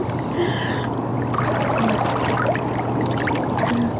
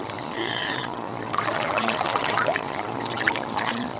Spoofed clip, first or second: second